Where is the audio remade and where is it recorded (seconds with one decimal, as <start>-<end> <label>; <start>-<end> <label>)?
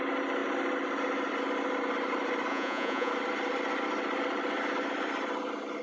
0.0-2.5 recorded; 2.5-3.1 remade; 3.1-5.8 recorded